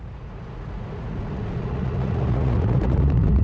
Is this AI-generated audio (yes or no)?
yes